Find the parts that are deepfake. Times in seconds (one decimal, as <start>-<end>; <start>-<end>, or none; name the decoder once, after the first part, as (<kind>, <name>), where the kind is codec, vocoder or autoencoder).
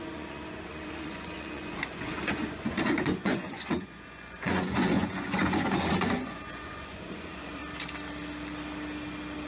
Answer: 0.0-7.6 (vocoder, Vocos)